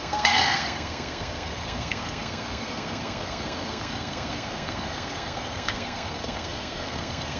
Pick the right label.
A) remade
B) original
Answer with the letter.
A